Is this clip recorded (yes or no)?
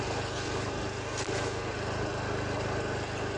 yes